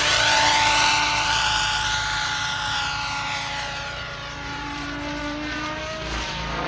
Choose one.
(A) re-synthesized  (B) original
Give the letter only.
A